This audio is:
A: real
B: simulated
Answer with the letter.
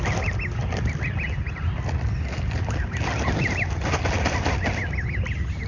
A